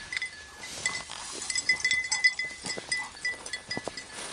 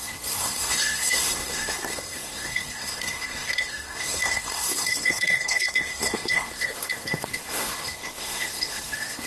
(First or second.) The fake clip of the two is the second